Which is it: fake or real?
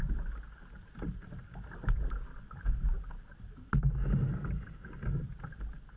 real